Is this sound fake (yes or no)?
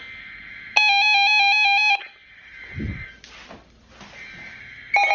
no